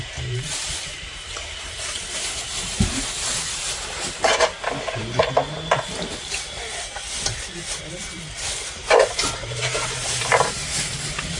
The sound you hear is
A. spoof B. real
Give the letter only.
A